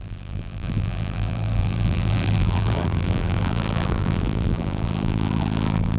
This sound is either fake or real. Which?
fake